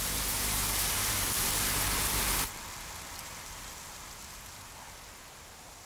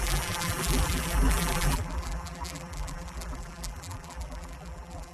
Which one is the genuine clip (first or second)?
first